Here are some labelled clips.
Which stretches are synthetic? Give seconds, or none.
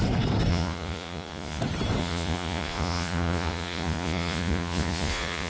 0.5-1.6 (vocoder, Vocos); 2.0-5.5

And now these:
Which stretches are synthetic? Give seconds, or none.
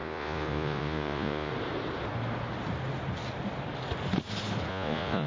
0.0-1.5 (vocoder, Vocos); 4.7-5.3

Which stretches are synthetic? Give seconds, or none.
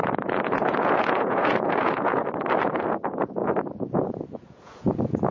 0.0-2.2 (vocoder, Vocos); 2.7-5.3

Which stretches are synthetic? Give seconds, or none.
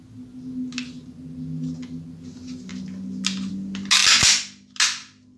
none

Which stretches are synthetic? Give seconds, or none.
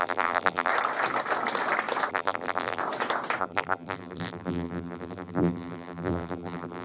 0.0-0.7 (vocoder, BigVGAN v2); 2.1-2.8; 3.4-6.8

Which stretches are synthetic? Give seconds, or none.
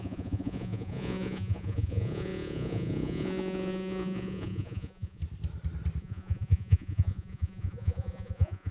0.0-5.2 (vocoder, Vocos); 6.0-8.7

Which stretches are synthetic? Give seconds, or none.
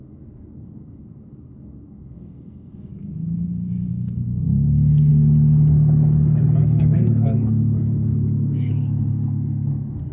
0.0-2.9 (codec, SNAC); 3.9-5.1; 6.6-10.1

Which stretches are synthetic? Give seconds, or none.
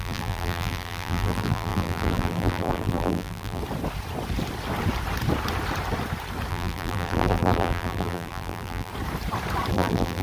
0.0-3.6 (vocoder, BigVGAN v2); 6.5-8.9; 9.7-10.2